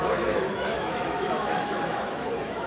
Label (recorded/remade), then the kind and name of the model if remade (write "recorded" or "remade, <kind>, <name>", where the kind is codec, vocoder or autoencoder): remade, autoencoder, DAC-VAE